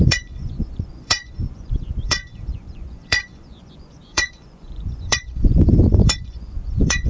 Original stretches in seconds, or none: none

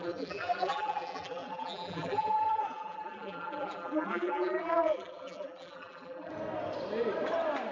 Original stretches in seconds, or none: 6.3-7.7

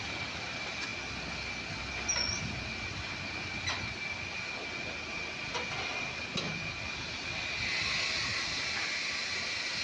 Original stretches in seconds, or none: 0.0-9.8